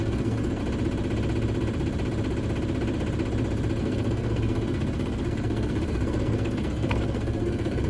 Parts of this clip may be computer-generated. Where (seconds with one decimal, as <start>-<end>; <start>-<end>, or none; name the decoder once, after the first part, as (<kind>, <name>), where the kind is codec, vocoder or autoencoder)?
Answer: 0.0-0.6 (codec, SNAC); 3.8-7.9

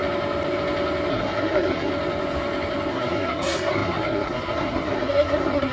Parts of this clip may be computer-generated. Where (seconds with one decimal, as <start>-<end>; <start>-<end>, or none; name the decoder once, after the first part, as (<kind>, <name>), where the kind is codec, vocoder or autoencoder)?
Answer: 1.1-1.9 (codec, SNAC); 2.9-5.7

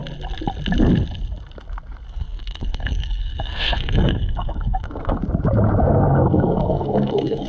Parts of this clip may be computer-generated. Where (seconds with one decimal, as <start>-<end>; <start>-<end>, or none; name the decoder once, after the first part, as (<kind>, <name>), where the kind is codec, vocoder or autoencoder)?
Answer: 2.1-5.2 (codec, SNAC); 5.8-7.5

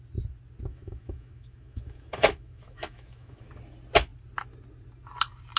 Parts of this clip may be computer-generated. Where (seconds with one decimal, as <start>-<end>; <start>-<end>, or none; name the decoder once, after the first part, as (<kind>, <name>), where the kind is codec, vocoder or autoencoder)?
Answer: 0.7-3.5 (autoencoder, DAC-VAE)

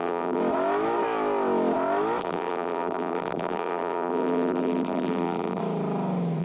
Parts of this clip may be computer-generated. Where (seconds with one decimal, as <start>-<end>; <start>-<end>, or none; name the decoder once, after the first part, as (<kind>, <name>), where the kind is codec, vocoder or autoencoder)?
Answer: 0.0-0.4 (vocoder, BigVGAN v2); 2.2-5.6

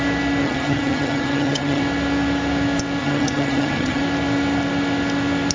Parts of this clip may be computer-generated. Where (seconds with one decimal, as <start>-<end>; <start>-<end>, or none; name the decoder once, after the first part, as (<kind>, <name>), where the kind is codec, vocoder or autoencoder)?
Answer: 0.4-1.8 (vocoder, HiFi-GAN); 3.0-4.0

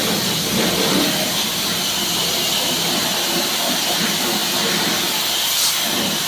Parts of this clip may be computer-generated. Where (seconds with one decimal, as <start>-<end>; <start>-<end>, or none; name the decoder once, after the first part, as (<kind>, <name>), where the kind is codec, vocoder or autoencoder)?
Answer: 0.0-3.8 (vocoder, BigVGAN v2); 4.4-5.7

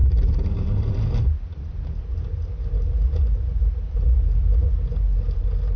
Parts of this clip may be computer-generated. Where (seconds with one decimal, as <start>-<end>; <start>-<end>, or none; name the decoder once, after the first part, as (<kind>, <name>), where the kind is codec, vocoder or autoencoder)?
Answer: 0.0-1.1 (vocoder, BigVGAN v2)